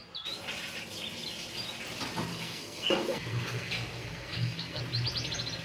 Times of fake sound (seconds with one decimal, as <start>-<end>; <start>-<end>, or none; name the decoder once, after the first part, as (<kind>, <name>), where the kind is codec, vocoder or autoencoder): 2.3-4.8 (codec, SNAC)